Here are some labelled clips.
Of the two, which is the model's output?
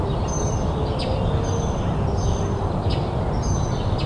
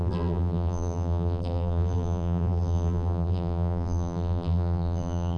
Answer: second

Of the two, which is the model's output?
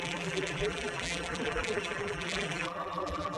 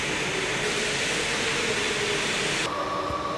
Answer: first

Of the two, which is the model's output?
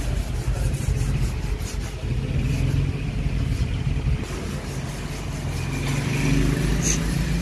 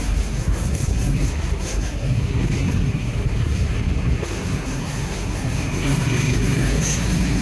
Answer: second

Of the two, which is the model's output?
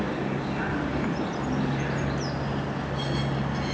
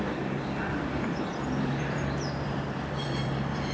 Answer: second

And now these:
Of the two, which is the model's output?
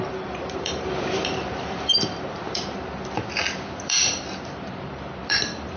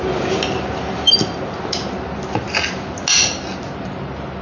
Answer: first